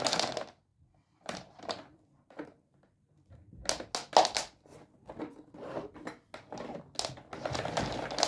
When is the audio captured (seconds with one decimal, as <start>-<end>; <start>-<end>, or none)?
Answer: 0.0-0.7; 3.3-4.7; 5.2-8.3